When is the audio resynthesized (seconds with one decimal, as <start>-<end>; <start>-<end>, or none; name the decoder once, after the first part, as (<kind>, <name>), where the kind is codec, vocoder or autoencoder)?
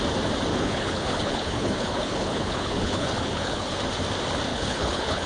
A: 0.5-3.7 (codec, HILCodec); 4.5-5.3